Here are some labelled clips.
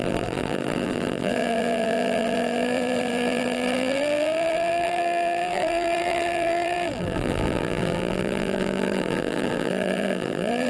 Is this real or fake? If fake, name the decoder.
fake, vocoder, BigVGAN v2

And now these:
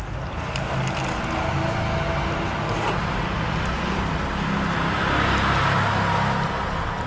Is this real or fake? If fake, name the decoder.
real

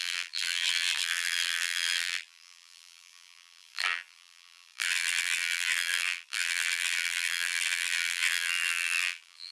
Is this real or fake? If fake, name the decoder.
fake, vocoder, BigVGAN v2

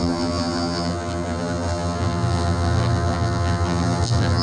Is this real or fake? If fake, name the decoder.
fake, vocoder, BigVGAN v2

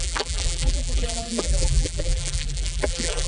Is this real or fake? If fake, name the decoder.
fake, vocoder, BigVGAN v2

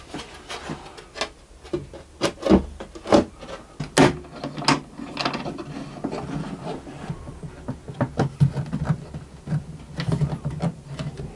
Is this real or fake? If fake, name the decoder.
real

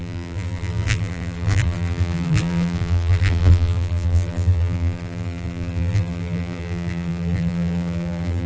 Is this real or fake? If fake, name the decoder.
fake, vocoder, BigVGAN v2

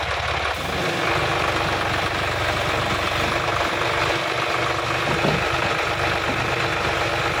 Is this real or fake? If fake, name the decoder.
real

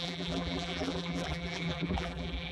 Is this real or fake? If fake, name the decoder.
fake, vocoder, BigVGAN v2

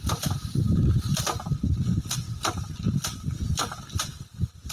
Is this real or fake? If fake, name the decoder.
real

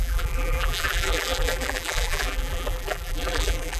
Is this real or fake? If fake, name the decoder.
fake, vocoder, BigVGAN v2